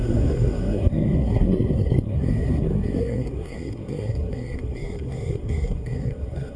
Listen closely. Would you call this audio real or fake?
fake